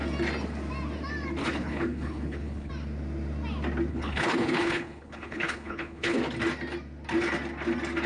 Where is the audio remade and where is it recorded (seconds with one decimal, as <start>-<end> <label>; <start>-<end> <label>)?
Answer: 0.0-1.4 recorded; 1.4-2.7 remade; 2.7-3.9 recorded; 3.9-6.2 remade; 6.2-8.1 recorded